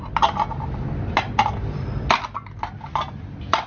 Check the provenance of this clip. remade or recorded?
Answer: recorded